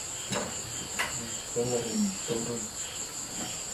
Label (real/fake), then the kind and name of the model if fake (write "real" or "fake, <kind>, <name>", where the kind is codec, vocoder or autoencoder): real